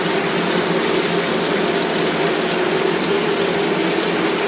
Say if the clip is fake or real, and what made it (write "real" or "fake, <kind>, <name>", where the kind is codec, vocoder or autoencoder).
real